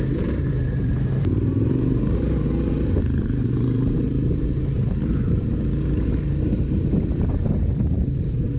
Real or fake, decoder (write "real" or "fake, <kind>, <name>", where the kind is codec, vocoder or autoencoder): fake, vocoder, BigVGAN v2